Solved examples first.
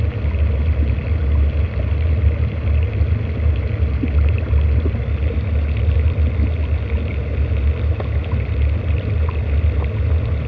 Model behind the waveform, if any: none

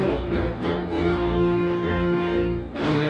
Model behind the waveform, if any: codec, DAC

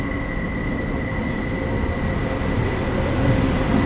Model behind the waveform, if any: none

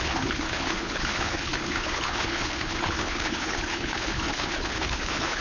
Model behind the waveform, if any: codec, HILCodec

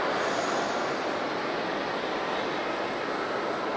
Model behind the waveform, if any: none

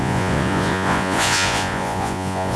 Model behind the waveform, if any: vocoder, Vocos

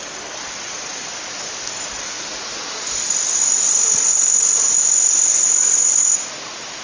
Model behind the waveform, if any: none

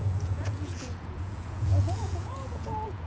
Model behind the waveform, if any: vocoder, Vocos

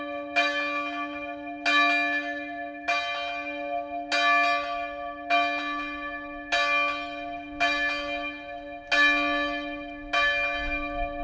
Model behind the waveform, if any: none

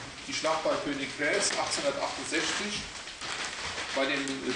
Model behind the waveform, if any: none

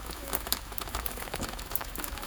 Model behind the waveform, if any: autoencoder, DAC-VAE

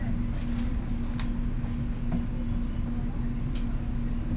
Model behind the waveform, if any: none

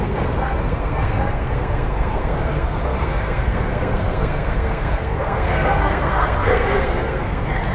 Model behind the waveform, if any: codec, SNAC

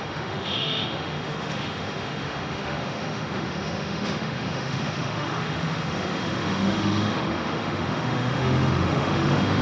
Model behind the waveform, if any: autoencoder, DAC-VAE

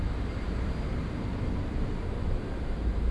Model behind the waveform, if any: vocoder, BigVGAN v2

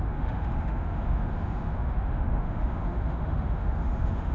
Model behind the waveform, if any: autoencoder, DAC-VAE